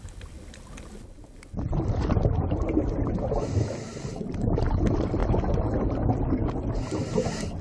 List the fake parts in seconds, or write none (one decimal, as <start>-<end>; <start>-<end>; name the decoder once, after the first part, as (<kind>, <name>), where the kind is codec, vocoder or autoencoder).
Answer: none